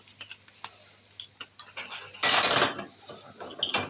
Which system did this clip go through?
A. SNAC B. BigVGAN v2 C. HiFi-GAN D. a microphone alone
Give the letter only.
D